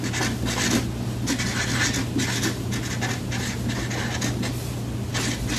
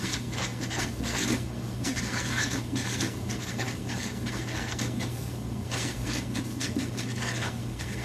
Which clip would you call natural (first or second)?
first